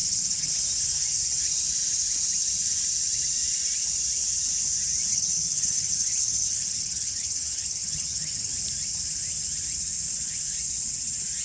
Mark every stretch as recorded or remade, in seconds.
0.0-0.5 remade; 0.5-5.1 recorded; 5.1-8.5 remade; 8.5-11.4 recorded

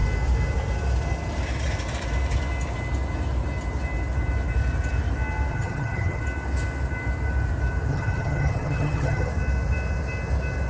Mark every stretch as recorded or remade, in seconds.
0.0-5.5 recorded; 5.5-6.2 remade; 6.2-7.9 recorded; 7.9-9.3 remade; 9.3-10.7 recorded

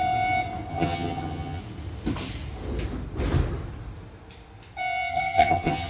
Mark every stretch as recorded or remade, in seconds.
0.0-0.7 recorded; 0.7-1.6 remade; 1.6-5.1 recorded; 5.1-5.9 remade

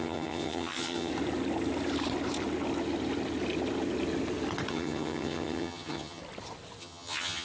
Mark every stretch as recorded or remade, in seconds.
0.0-1.1 remade; 1.1-4.7 recorded; 4.7-6.2 remade; 6.2-6.8 recorded; 6.8-7.4 remade

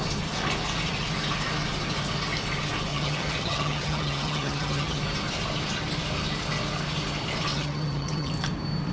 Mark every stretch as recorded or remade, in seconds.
0.0-2.9 recorded; 2.9-5.0 remade; 5.0-7.5 recorded; 7.5-8.3 remade; 8.3-8.9 recorded

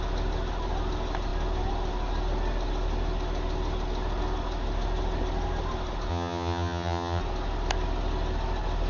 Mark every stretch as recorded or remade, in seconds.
0.0-6.1 recorded; 6.1-7.2 remade; 7.2-8.9 recorded

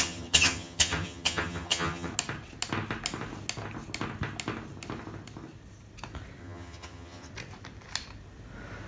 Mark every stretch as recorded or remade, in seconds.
0.0-2.1 remade; 2.1-6.4 recorded; 6.4-7.3 remade; 7.3-8.9 recorded